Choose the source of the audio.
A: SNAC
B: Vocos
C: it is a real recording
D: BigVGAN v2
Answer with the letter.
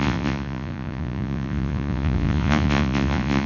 B